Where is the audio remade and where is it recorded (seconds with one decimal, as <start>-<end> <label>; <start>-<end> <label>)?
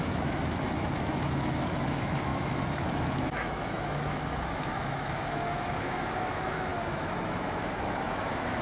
0.0-8.6 remade